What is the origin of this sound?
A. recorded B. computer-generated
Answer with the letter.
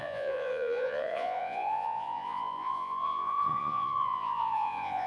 B